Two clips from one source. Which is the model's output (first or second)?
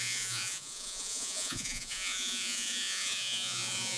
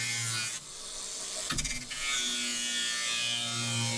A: first